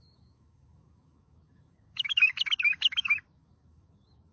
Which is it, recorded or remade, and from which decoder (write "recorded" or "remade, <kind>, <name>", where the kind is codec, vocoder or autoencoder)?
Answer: remade, autoencoder, DAC-VAE